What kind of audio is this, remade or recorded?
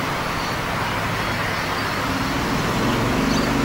recorded